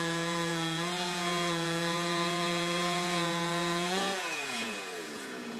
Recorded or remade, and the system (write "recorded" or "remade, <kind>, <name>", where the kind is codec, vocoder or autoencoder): remade, vocoder, Vocos